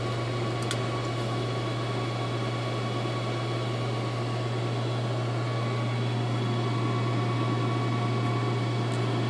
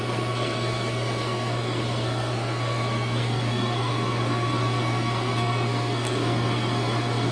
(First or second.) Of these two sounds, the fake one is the second